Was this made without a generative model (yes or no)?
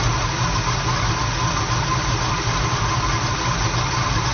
yes